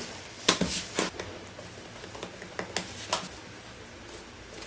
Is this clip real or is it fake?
real